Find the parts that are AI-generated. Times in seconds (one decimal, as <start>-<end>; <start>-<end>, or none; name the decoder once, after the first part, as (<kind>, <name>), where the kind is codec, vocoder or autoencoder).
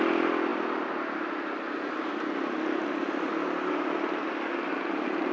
4.7-5.3 (vocoder, BigVGAN v2)